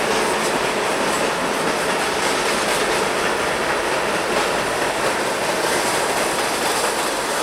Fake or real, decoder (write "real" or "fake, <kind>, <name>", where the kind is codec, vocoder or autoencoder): real